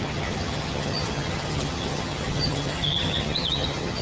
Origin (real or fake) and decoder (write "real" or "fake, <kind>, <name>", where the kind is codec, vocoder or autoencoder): fake, vocoder, HiFi-GAN